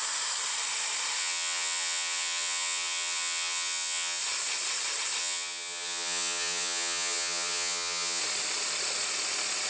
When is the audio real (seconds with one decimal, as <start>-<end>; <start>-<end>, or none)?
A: 0.0-1.2; 4.2-5.2; 8.2-9.7